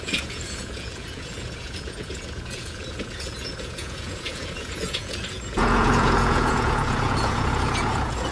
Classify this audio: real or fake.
fake